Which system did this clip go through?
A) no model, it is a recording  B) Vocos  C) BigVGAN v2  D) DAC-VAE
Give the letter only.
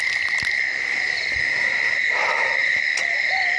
C